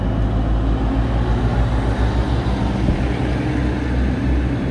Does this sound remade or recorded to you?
recorded